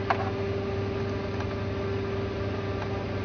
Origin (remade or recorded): recorded